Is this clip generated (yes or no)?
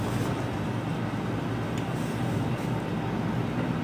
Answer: no